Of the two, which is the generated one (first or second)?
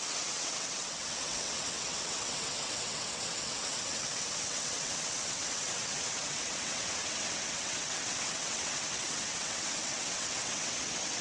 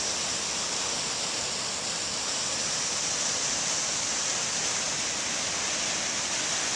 first